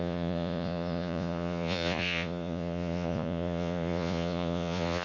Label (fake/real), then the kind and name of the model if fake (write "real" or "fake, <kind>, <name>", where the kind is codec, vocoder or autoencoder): fake, vocoder, Vocos